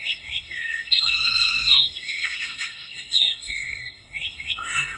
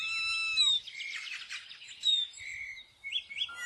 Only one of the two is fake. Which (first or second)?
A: first